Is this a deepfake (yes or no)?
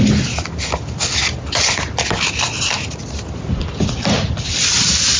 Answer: no